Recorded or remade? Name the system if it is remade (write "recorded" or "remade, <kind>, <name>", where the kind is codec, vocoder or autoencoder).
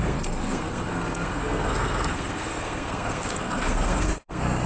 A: remade, codec, SNAC